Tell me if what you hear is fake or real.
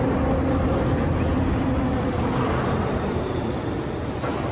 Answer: real